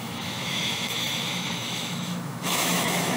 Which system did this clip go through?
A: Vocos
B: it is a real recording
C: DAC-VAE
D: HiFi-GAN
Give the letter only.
C